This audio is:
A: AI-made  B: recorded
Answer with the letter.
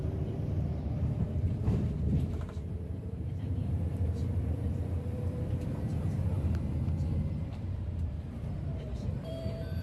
A